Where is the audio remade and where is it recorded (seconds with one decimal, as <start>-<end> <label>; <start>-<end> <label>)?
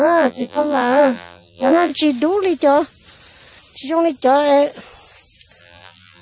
0.0-1.9 remade; 1.9-5.6 recorded; 5.6-6.2 remade